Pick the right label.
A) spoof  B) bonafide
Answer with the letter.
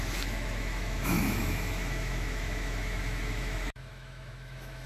A